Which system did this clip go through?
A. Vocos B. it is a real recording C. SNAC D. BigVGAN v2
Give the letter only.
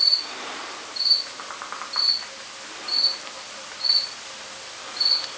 B